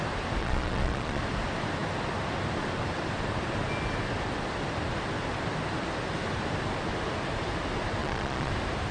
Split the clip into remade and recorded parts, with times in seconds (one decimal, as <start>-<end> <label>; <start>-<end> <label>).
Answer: 0.0-0.4 recorded; 0.4-1.2 remade; 1.2-8.0 recorded; 8.0-8.5 remade; 8.5-8.9 recorded